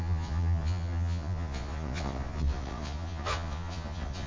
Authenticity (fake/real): fake